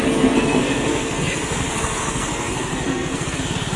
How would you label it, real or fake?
fake